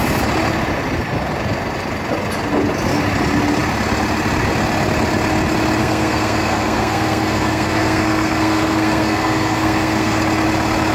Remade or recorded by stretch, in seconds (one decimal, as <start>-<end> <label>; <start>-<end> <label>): 0.0-5.8 recorded; 5.8-10.2 remade; 10.2-10.9 recorded